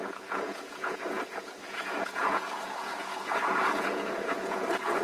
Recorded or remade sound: remade